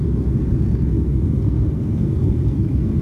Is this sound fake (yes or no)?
yes